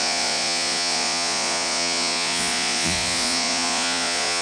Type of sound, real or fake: fake